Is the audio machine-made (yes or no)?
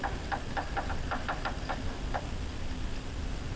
no